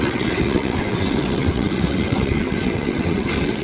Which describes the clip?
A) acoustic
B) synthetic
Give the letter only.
B